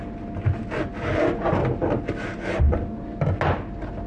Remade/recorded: recorded